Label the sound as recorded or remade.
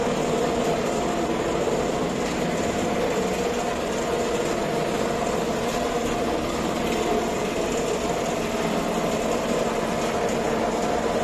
recorded